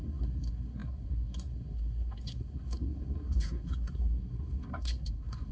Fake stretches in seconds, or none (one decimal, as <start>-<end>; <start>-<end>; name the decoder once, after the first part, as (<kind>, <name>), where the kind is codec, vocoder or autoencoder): 0.0-5.5 (codec, SNAC)